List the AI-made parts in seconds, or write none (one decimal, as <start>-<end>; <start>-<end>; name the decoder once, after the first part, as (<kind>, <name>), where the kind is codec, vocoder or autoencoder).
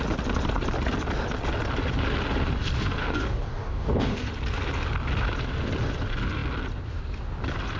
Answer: 3.0-4.3 (codec, DAC)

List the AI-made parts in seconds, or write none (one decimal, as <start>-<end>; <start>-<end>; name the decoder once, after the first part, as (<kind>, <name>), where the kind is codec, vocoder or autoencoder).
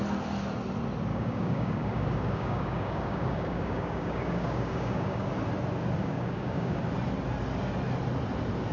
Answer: 1.1-5.3 (codec, DAC); 6.0-6.8